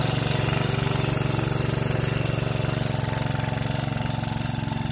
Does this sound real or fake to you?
real